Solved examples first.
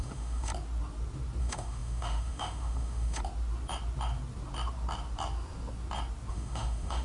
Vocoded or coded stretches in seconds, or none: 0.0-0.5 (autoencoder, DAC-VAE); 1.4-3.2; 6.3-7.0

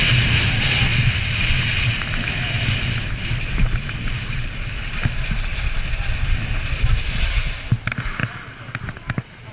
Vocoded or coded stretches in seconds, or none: none

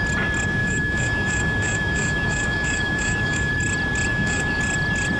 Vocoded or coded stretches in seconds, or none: 0.6-3.5 (autoencoder, DAC-VAE); 4.1-4.6

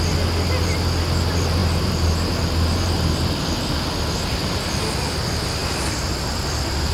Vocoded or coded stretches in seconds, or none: none

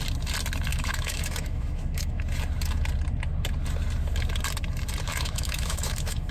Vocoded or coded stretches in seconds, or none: 0.7-2.2 (autoencoder, DAC-VAE); 5.1-6.3

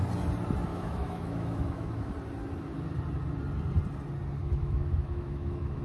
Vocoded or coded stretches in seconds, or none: 0.7-2.1 (autoencoder, DAC-VAE); 4.4-5.8